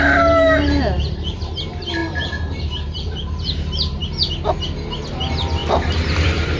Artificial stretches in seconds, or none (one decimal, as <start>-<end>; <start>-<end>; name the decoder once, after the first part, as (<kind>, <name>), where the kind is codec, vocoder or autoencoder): 0.0-4.0 (vocoder, BigVGAN v2); 5.1-5.6